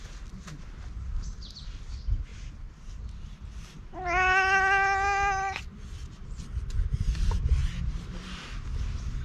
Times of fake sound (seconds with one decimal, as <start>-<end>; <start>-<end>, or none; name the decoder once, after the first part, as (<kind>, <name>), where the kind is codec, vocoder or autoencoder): none